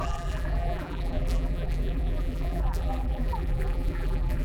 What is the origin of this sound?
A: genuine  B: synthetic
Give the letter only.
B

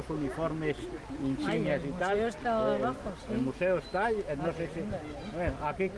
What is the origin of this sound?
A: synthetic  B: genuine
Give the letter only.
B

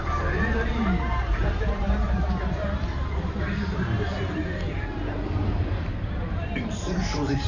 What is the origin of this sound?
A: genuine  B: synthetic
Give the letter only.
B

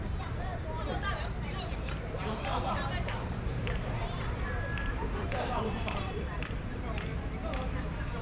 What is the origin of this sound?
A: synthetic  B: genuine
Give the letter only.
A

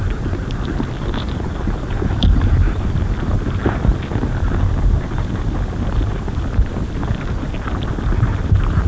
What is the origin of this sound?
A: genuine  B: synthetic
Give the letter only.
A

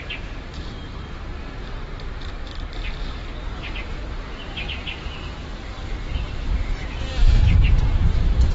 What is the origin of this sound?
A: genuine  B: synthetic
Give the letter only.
B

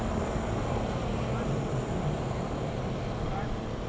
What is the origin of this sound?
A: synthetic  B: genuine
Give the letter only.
B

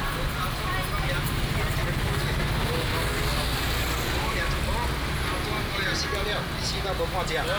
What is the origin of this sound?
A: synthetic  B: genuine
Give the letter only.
B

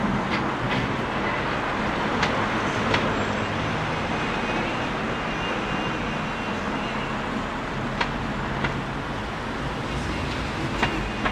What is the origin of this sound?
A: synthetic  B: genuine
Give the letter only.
B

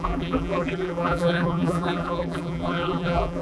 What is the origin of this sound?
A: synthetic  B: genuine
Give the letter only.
A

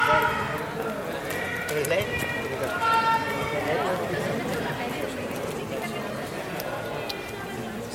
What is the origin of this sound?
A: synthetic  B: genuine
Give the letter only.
B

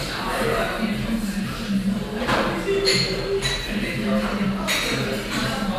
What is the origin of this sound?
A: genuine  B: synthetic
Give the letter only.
B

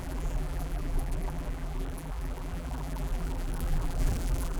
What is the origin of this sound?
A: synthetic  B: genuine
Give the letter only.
A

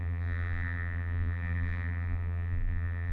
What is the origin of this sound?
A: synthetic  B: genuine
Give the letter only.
A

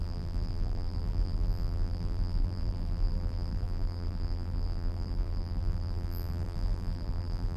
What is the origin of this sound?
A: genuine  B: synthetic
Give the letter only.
B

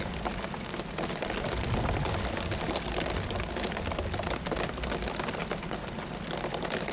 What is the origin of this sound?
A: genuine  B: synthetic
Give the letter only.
A